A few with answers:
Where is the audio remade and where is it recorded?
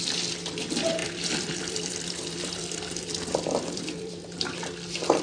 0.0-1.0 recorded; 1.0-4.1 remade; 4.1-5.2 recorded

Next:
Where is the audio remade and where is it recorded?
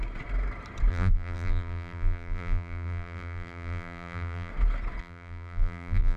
0.0-0.9 recorded; 0.9-4.5 remade; 4.5-5.0 recorded; 5.0-6.2 remade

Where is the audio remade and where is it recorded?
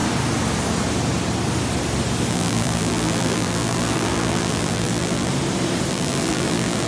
0.0-2.3 recorded; 2.3-5.3 remade; 5.3-5.9 recorded; 5.9-6.9 remade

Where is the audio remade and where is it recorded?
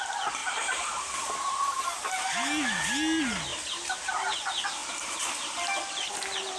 0.0-0.4 recorded; 0.4-0.9 remade; 0.9-3.5 recorded; 3.5-4.1 remade; 4.1-4.8 recorded; 4.8-5.6 remade; 5.6-6.6 recorded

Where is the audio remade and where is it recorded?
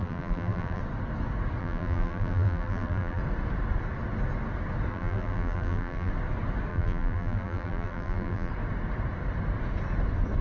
0.0-0.8 remade; 0.8-1.6 recorded; 1.6-3.2 remade; 3.2-4.9 recorded; 4.9-6.1 remade; 6.1-6.7 recorded; 6.7-8.5 remade; 8.5-10.4 recorded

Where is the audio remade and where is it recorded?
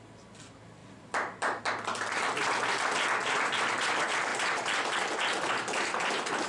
0.0-4.3 recorded; 4.3-4.9 remade; 4.9-6.5 recorded